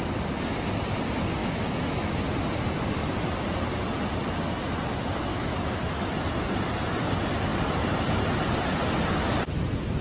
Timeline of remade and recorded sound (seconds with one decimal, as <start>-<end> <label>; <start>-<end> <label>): 0.0-1.4 recorded; 1.4-2.2 remade; 2.2-5.3 recorded; 5.3-6.1 remade; 6.1-10.0 recorded